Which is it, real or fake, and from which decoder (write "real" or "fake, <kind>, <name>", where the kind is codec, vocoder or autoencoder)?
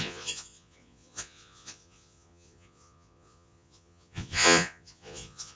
fake, vocoder, Vocos